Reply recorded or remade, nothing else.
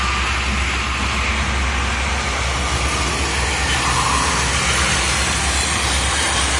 recorded